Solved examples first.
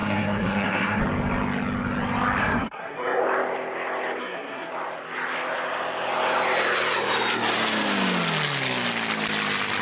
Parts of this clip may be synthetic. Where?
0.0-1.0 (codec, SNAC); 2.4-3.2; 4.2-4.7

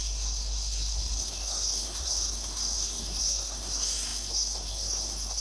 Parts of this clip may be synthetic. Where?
0.0-5.4 (codec, SNAC)